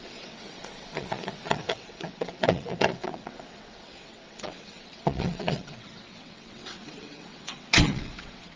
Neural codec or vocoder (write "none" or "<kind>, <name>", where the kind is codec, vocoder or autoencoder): vocoder, WaveNeXt